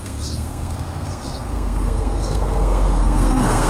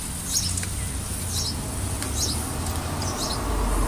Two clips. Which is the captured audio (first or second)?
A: second